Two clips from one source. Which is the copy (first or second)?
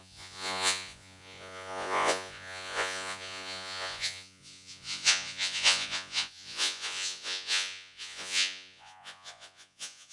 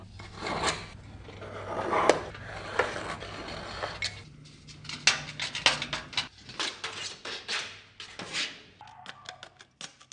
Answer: first